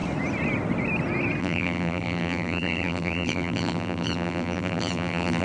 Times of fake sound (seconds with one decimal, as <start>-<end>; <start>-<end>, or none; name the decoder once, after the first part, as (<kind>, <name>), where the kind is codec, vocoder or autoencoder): 1.4-5.4 (vocoder, BigVGAN v2)